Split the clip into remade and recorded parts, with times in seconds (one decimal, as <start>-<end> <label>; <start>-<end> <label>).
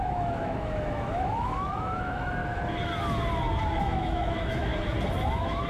0.0-2.4 remade; 2.4-3.8 recorded; 3.8-4.7 remade; 4.7-5.3 recorded; 5.3-5.7 remade